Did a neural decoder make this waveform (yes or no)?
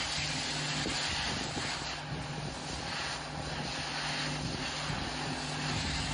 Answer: no